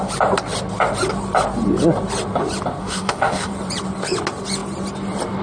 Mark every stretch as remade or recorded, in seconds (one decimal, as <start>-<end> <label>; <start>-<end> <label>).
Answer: 0.0-2.8 recorded; 2.8-3.5 remade; 3.5-5.4 recorded